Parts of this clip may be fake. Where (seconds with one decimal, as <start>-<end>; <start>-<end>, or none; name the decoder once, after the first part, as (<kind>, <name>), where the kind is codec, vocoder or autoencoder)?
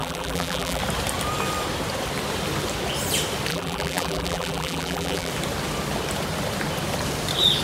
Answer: 0.0-0.8 (vocoder, BigVGAN v2); 3.5-5.3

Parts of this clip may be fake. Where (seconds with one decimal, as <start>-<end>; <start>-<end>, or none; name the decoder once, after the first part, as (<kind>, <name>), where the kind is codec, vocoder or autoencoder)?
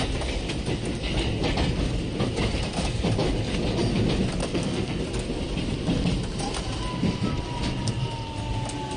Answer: 4.4-5.0 (codec, SNAC)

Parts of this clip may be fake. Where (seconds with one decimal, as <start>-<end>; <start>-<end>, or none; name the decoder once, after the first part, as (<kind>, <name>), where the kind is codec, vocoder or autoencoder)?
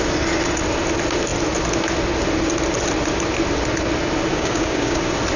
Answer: 4.3-5.0 (codec, DAC)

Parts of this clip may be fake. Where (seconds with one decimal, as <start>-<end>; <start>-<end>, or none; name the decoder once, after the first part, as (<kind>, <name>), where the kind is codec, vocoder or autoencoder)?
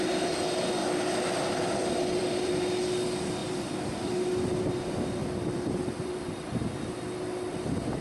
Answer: 0.8-2.5 (vocoder, BigVGAN v2); 3.4-4.1; 5.2-6.7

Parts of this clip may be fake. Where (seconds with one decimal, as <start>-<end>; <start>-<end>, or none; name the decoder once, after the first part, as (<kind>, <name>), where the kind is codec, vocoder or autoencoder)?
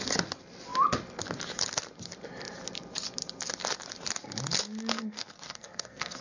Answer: 4.9-6.2 (codec, SNAC)